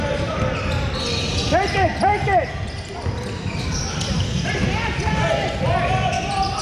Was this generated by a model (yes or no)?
no